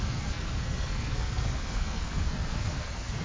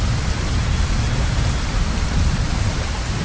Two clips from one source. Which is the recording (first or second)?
second